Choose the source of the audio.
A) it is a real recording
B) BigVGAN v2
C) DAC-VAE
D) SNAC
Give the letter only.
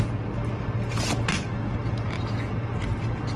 A